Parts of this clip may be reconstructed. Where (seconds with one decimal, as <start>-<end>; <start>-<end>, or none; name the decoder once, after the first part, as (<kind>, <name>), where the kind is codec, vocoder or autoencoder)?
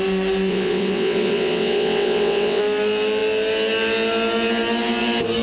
0.5-2.6 (vocoder, WaveNeXt)